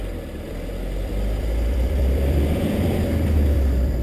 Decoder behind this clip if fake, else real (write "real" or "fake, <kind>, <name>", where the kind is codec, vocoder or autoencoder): fake, vocoder, BigVGAN v2